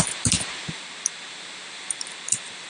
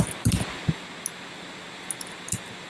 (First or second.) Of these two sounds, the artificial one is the first